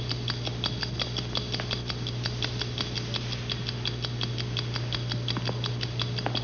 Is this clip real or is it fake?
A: real